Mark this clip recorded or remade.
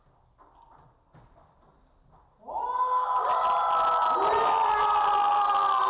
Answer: recorded